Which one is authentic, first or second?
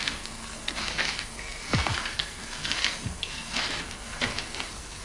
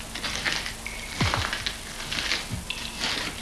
second